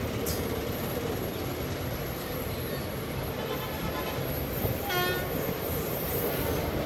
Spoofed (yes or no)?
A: no